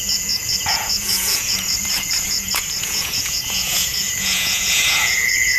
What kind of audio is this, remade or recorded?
remade